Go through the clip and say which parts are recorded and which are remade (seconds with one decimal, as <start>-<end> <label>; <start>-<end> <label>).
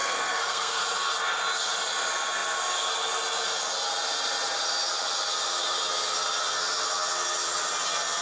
0.0-0.8 remade; 0.8-8.2 recorded